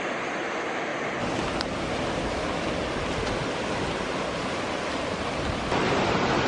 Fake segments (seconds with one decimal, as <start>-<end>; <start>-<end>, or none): none